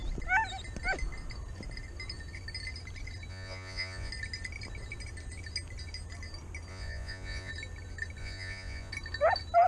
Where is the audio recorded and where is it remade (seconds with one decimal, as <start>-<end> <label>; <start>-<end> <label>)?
0.0-3.3 recorded; 3.3-4.1 remade; 4.1-6.7 recorded; 6.7-7.5 remade; 7.5-8.2 recorded; 8.2-8.9 remade; 8.9-9.7 recorded

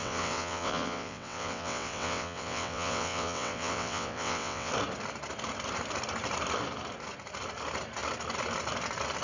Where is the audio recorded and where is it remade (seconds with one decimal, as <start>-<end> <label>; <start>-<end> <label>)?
0.0-4.7 remade; 4.7-9.2 recorded

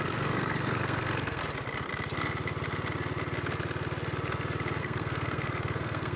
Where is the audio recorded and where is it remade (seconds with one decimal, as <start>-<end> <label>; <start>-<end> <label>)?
0.0-1.4 remade; 1.4-4.8 recorded; 4.8-6.2 remade

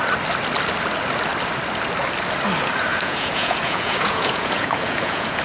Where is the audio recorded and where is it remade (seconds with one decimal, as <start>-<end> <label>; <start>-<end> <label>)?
0.0-2.9 recorded; 2.9-5.4 remade